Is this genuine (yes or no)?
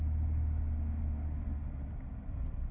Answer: yes